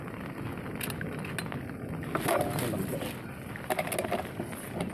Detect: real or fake real